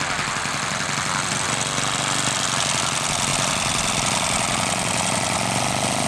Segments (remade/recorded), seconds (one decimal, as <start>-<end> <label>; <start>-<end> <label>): 0.0-6.1 recorded